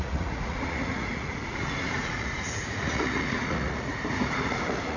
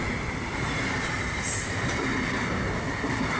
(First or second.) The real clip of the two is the second